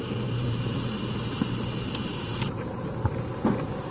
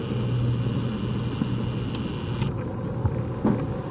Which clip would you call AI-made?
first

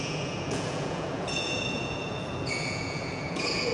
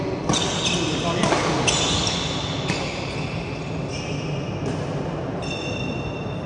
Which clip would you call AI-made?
first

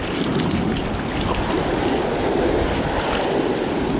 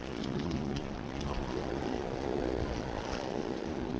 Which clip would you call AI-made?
second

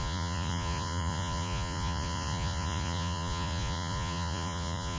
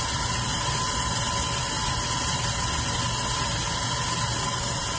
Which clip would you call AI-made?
first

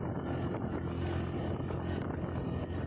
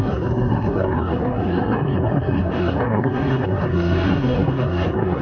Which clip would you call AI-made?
second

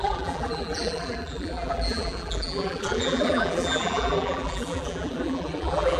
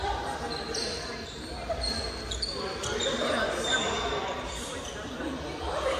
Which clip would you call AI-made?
first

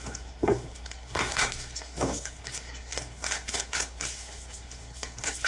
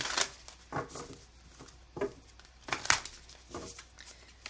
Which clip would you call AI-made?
first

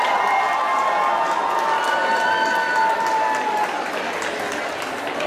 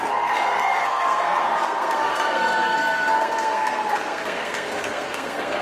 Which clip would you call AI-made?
second